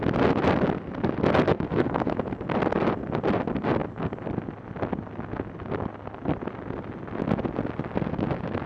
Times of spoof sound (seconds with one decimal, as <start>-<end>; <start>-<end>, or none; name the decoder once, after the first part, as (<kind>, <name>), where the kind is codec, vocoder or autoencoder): 1.5-2.1 (codec, SNAC)